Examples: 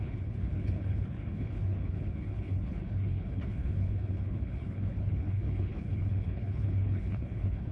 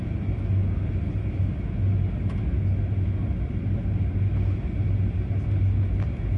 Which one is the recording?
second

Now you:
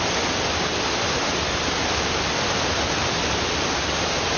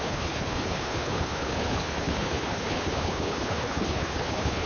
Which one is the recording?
first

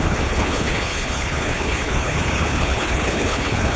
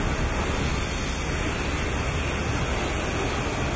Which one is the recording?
second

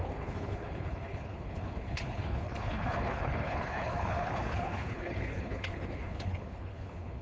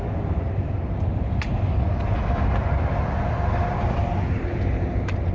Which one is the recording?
second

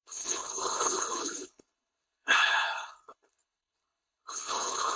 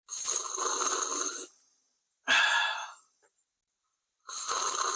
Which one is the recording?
second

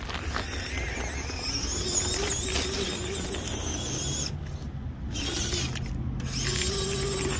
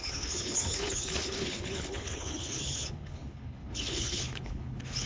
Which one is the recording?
first